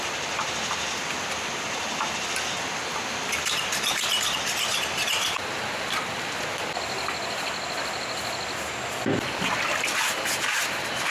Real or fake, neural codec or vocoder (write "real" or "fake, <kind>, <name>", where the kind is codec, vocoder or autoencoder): real